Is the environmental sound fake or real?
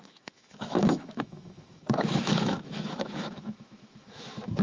fake